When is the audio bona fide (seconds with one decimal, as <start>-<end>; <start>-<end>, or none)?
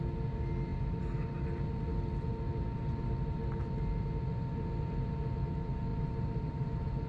0.0-5.9